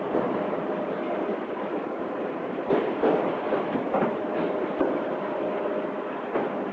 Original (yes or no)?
yes